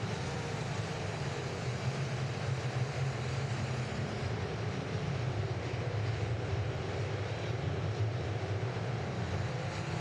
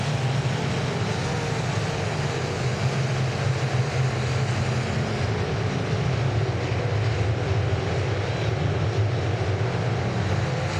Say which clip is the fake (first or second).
first